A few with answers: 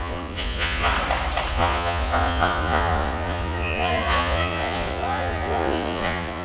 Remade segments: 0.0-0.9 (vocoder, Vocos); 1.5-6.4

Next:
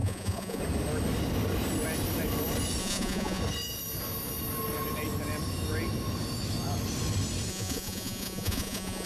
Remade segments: 0.0-0.6 (vocoder, Vocos); 2.8-3.4; 7.5-9.1

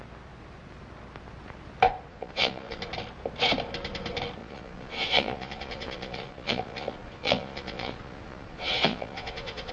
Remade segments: 2.1-2.8 (vocoder, Vocos); 4.4-9.7

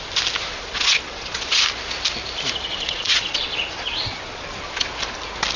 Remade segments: 0.5-1.6 (vocoder, Vocos); 2.7-4.9

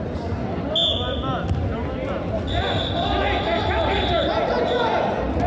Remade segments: none

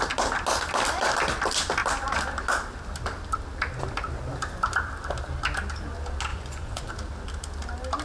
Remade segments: 6.3-6.9 (vocoder, Vocos)

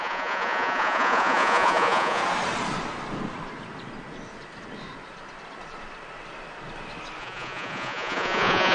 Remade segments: 0.0-2.2 (vocoder, Vocos); 7.2-8.7

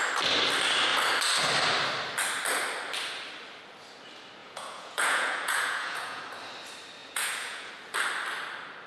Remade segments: 4.4-6.2 (vocoder, Vocos); 7.0-7.7